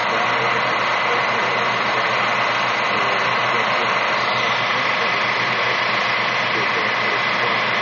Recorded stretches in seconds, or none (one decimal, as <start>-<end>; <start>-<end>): 0.0-7.8